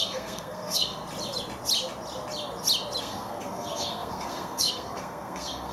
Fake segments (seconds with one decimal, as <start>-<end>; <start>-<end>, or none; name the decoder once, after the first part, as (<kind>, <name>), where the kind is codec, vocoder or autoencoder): 0.0-1.0 (codec, SNAC); 3.0-5.7